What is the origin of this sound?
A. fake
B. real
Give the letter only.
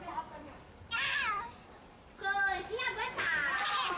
A